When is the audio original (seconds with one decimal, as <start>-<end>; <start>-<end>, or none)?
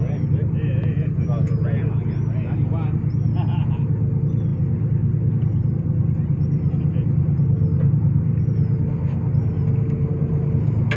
0.0-11.0